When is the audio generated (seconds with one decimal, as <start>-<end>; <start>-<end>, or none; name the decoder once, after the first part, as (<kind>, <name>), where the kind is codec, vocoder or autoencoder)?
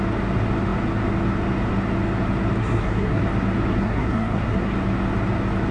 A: 2.6-3.2 (codec, SNAC); 3.7-4.7